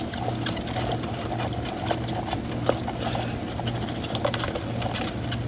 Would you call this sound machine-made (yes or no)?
no